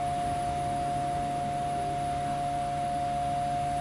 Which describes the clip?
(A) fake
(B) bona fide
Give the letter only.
B